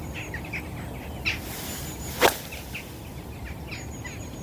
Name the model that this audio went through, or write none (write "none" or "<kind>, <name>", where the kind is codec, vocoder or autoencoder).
none